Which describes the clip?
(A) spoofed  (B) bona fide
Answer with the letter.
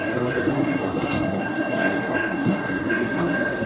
A